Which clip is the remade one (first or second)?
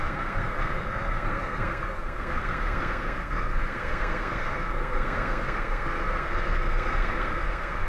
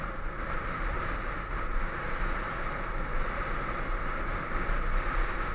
first